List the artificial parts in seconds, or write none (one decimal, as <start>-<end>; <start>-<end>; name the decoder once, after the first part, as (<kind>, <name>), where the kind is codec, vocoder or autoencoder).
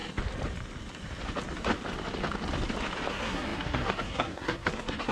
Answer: 3.1-5.1 (codec, SNAC)